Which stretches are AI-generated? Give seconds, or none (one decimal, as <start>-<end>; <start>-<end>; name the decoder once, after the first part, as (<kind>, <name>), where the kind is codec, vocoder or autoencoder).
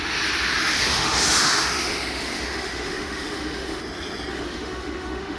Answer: 0.6-3.8 (autoencoder, DAC-VAE); 4.3-5.4